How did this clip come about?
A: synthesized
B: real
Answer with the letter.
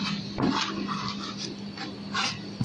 B